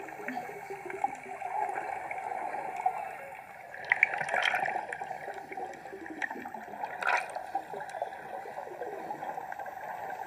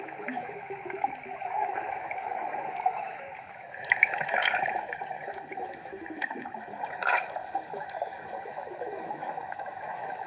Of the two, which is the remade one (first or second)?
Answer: second